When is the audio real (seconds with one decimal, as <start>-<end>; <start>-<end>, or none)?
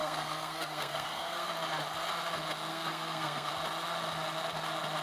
1.5-2.7; 3.5-5.0